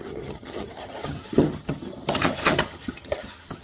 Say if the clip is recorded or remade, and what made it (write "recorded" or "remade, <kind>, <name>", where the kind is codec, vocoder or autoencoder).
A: remade, vocoder, HiFi-GAN